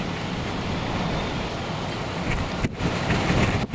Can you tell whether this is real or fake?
real